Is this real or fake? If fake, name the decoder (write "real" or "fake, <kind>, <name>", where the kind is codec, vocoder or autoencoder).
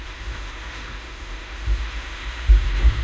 fake, autoencoder, DAC-VAE